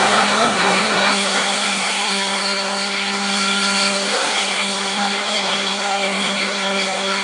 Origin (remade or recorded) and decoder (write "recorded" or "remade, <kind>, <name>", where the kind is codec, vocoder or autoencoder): remade, codec, SNAC